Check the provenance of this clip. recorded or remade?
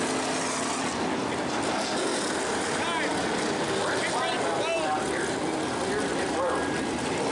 recorded